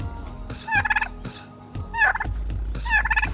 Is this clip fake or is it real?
real